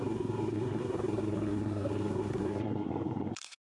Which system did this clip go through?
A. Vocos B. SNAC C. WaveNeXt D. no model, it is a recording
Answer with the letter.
B